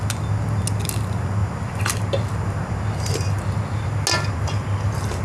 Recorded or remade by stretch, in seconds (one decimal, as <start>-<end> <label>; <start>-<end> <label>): 0.0-5.2 recorded